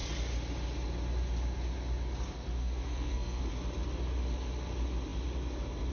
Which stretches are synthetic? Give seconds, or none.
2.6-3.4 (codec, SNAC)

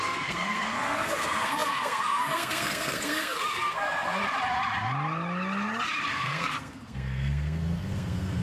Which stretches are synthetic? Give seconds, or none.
0.0-4.2 (codec, SNAC); 6.1-8.4

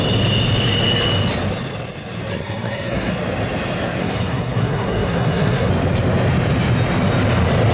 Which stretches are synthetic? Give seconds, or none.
2.3-3.1 (codec, SNAC); 4.0-5.7

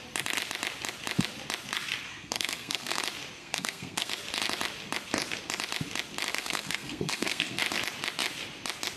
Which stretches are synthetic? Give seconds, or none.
2.1-3.0 (codec, SNAC); 3.4-4.1; 6.3-7.6

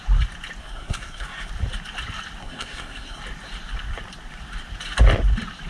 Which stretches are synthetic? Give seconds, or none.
0.6-1.5 (codec, SNAC); 2.4-3.2

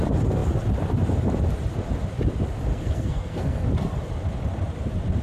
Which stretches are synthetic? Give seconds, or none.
2.7-3.7 (codec, SNAC)

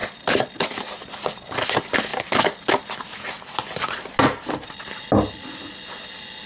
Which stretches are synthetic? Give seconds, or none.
none

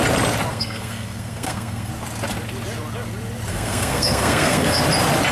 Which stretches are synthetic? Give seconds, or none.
0.5-1.9 (codec, SNAC); 3.5-4.8